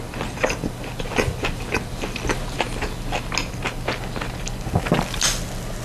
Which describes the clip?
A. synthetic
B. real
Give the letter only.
B